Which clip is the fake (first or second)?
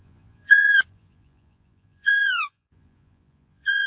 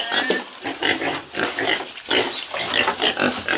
first